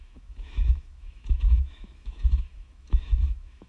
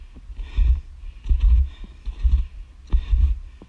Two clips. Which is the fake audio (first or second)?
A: first